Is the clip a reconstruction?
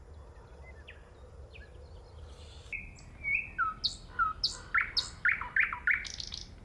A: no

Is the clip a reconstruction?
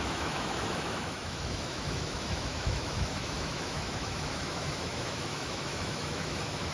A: yes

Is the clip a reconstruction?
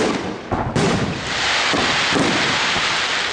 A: no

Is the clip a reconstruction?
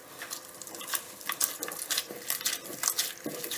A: no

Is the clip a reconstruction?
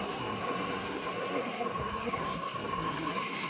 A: yes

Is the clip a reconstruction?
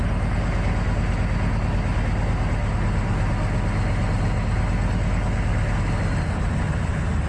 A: no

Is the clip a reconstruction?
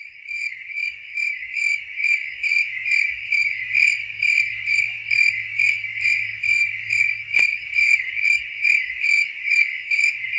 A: yes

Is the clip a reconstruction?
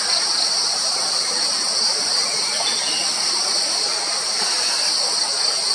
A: no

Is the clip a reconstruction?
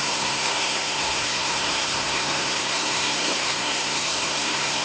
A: yes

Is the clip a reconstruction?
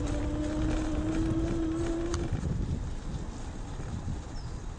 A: no